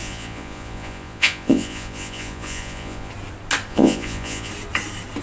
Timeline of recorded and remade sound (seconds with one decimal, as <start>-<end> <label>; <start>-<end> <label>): 0.0-3.1 remade; 3.1-3.7 recorded; 3.7-4.5 remade; 4.5-5.2 recorded